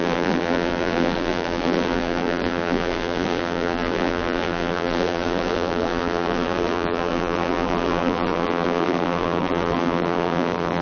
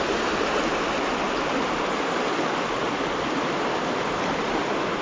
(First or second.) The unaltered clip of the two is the second